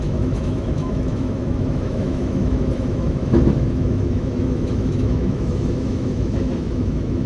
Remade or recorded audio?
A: remade